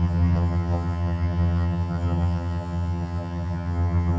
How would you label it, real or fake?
fake